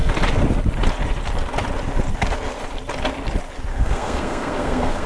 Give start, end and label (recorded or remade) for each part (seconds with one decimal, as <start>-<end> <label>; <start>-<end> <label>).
0.0-3.7 recorded; 3.7-5.1 remade